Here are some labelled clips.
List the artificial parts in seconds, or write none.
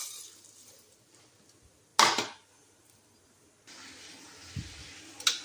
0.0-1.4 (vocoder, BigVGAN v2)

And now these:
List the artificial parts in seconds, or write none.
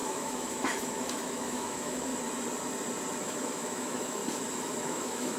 0.0-2.1 (autoencoder, DAC-VAE); 3.2-4.2; 4.8-5.4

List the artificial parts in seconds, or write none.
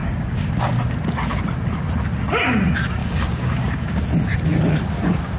0.0-0.7 (codec, DAC); 3.0-4.0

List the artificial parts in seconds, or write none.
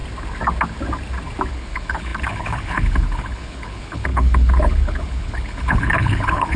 1.5-6.6 (codec, HILCodec)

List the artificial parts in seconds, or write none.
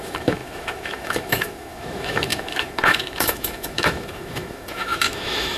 0.0-5.6 (autoencoder, DAC-VAE)